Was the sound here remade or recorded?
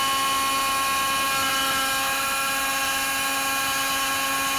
recorded